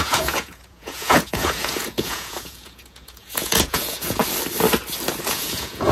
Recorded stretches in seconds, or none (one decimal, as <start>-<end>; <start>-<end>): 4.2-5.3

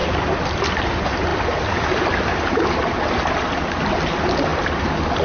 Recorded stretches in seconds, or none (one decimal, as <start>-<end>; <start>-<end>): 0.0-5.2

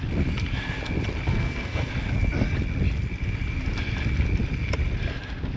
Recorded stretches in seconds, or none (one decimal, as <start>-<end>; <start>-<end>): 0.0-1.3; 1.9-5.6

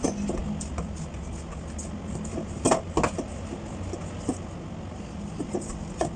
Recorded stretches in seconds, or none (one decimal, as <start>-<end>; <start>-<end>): 0.0-6.2

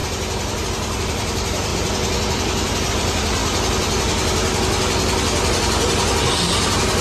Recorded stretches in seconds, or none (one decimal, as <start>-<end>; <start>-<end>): 0.0-0.6; 1.7-2.9; 3.4-7.0

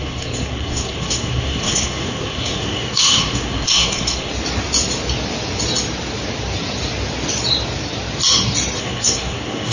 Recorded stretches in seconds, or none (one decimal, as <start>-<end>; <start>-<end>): 4.3-8.8